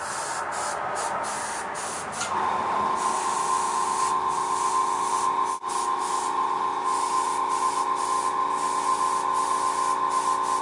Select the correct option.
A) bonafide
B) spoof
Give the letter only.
A